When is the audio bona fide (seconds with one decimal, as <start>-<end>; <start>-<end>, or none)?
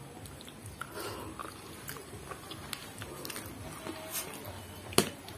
0.0-5.4